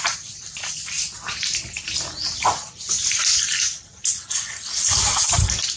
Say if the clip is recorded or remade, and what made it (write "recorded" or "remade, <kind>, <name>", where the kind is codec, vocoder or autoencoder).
recorded